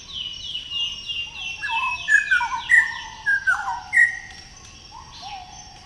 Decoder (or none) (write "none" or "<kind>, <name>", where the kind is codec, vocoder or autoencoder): none